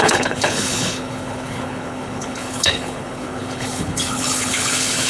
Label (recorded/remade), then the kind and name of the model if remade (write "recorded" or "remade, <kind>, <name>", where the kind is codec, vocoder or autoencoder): remade, codec, HILCodec